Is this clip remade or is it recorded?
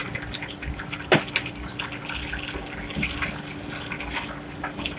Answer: recorded